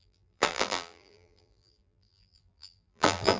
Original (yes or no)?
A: no